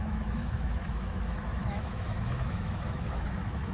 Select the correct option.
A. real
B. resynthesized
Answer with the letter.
B